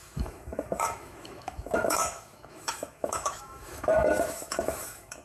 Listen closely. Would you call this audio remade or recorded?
remade